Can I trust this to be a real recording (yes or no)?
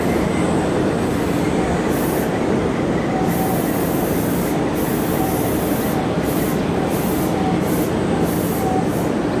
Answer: yes